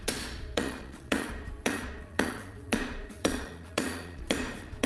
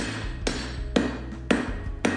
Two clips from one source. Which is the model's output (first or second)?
first